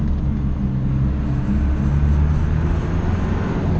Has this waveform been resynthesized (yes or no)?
no